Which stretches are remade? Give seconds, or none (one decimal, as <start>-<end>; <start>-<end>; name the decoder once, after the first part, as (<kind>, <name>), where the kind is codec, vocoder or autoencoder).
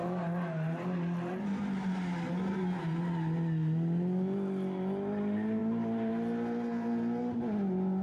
none